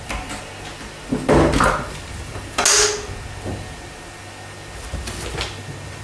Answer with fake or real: real